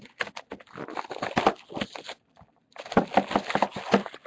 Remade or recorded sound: recorded